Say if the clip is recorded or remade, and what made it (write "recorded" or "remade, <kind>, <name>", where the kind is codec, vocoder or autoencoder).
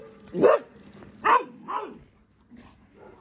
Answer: recorded